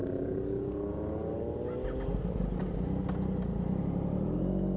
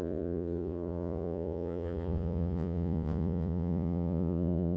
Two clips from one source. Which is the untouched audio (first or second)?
first